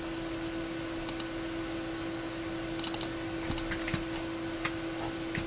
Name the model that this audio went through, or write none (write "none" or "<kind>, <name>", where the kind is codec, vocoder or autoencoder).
none